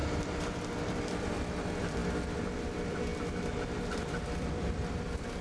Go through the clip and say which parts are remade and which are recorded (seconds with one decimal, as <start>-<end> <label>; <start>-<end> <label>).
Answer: 0.0-2.0 remade; 2.0-2.7 recorded; 2.7-3.1 remade; 3.1-4.0 recorded; 4.0-5.4 remade